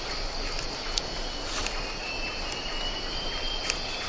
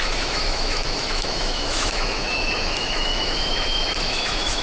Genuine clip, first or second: first